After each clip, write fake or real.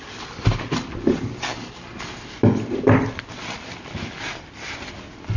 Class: real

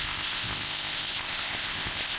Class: fake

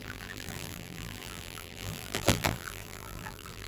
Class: fake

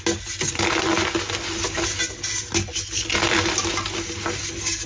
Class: real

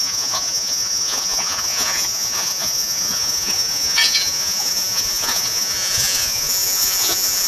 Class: fake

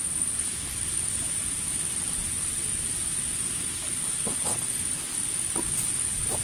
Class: real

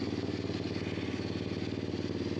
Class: real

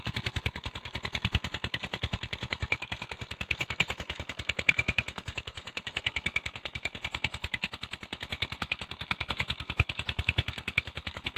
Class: fake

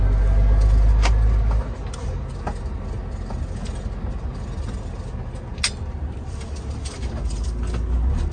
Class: real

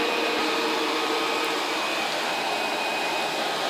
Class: fake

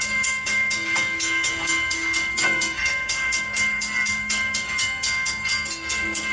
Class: fake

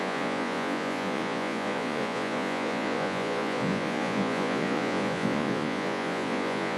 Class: fake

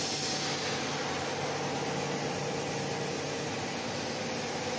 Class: real